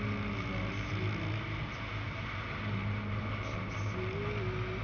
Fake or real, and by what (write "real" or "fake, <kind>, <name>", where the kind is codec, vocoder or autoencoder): real